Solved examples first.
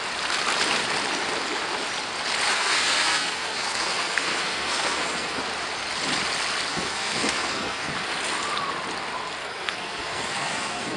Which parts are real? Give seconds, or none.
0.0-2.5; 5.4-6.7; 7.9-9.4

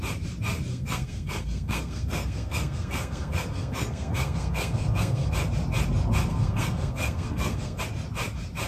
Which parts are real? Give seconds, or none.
0.0-0.7; 5.3-6.3; 7.8-8.7

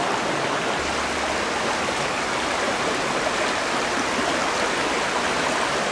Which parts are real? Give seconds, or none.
0.0-5.9